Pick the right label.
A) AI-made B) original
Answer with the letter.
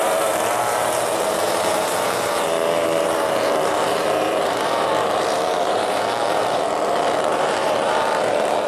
A